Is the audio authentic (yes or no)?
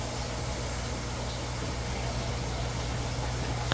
yes